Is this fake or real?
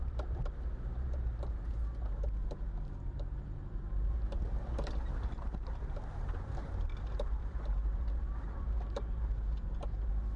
fake